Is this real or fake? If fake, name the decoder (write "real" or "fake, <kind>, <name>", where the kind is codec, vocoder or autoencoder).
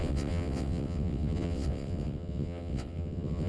fake, vocoder, WaveNeXt